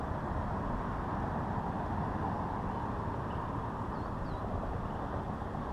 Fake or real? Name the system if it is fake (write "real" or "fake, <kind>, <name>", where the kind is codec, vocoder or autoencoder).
real